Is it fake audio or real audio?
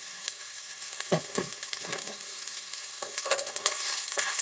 fake